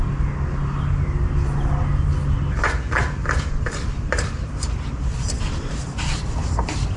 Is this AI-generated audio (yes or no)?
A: no